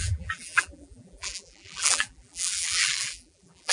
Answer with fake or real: fake